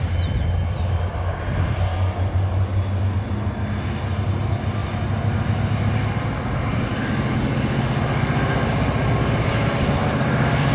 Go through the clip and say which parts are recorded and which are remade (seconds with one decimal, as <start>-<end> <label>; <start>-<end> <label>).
0.0-10.7 recorded

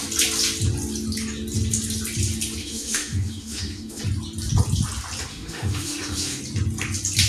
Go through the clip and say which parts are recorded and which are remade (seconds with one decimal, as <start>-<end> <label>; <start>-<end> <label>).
0.0-2.6 recorded; 2.6-4.0 remade; 4.0-5.3 recorded; 5.3-6.4 remade; 6.4-7.3 recorded

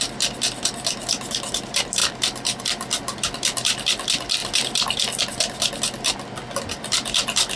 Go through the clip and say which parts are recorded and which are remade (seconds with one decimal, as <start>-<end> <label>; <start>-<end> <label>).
0.0-7.6 recorded